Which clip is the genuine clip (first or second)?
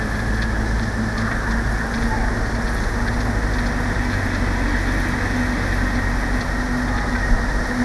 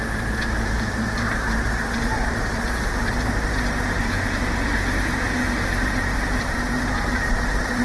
first